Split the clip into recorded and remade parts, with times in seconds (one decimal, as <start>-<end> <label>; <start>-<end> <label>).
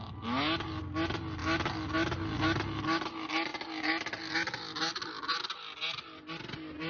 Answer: 0.0-6.9 recorded